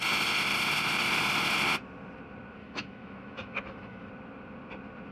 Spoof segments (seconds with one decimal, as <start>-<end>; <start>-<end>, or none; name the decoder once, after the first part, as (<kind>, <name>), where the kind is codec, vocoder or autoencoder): 2.6-4.1 (autoencoder, DAC-VAE)